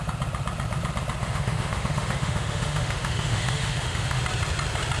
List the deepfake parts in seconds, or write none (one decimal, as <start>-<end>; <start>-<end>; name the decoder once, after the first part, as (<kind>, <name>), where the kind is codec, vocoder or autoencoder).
1.2-4.2 (autoencoder, DAC-VAE)